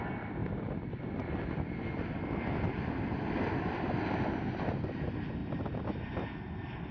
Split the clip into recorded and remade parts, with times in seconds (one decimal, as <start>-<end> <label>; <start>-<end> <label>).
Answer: 0.0-0.4 recorded; 0.4-4.5 remade; 4.5-6.9 recorded